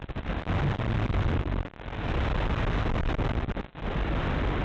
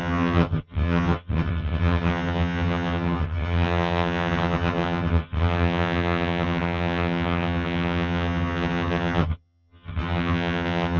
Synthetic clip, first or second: second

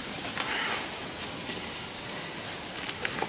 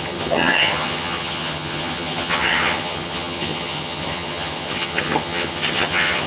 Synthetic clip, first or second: second